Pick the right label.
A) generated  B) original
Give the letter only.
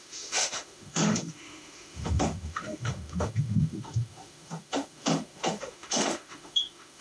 A